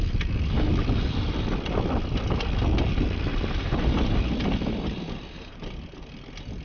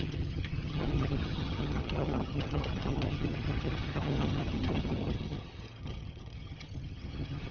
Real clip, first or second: first